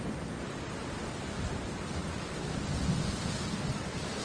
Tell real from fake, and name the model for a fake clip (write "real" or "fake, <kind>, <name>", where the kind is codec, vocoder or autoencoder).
real